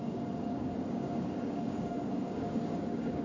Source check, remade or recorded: remade